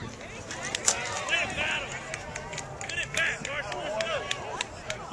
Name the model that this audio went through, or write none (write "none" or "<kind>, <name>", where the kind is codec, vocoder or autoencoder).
none